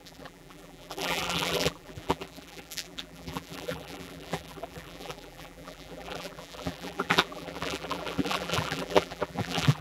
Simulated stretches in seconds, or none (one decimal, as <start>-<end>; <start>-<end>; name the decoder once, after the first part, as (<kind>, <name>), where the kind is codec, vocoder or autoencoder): 0.0-9.8 (vocoder, BigVGAN v2)